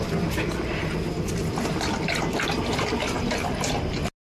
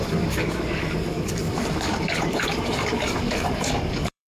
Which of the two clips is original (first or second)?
first